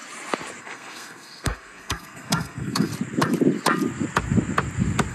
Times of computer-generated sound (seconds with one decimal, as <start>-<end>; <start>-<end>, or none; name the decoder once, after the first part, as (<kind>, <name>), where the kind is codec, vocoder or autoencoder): 0.6-2.9 (codec, SNAC)

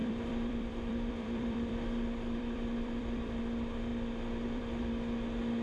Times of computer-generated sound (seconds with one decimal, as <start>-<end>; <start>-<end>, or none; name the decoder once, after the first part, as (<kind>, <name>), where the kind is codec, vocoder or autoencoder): 0.0-3.4 (vocoder, BigVGAN v2); 3.9-4.6

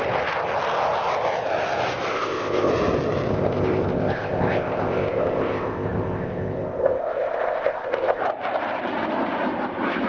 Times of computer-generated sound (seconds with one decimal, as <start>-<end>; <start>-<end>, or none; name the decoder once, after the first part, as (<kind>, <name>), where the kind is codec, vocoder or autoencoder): 2.1-2.7 (codec, ZipCodec); 3.3-8.2

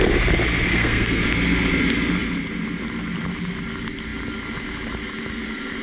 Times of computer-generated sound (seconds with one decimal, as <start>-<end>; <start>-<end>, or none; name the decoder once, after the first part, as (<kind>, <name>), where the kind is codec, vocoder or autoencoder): 0.7-1.2 (codec, SNAC)

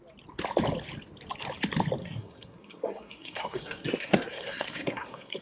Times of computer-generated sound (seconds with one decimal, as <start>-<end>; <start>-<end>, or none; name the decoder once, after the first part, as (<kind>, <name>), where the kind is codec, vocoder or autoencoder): 2.0-5.4 (codec, SNAC)